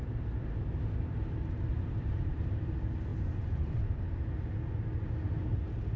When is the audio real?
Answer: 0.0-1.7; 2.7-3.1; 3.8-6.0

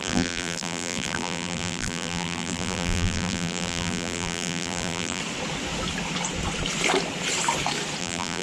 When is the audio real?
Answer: 5.2-8.0

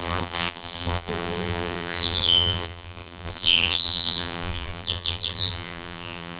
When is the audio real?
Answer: none

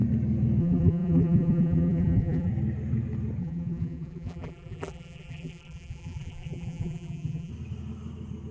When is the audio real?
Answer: 0.0-0.6; 2.5-3.4; 7.5-8.5